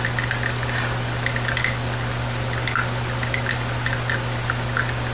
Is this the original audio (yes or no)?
yes